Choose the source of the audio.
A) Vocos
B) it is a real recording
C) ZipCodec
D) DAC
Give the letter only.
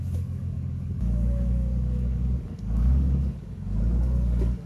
D